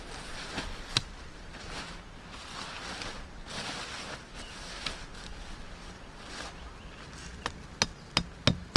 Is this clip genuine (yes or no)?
yes